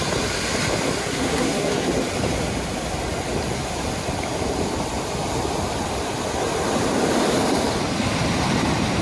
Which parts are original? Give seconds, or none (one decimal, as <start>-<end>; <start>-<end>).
0.0-1.0; 1.9-9.0